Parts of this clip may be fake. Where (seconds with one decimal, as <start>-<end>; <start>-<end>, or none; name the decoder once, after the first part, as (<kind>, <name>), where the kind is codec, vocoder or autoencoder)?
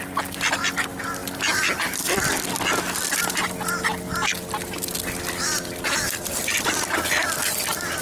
none